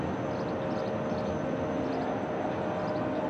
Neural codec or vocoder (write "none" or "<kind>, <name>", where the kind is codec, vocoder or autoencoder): none